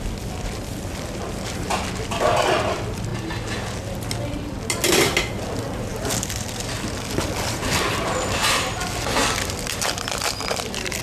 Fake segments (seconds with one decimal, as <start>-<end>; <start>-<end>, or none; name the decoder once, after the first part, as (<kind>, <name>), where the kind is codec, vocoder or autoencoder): 0.0-3.1 (vocoder, BigVGAN v2); 5.3-11.0